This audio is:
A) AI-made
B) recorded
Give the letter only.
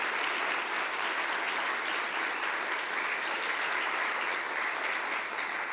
B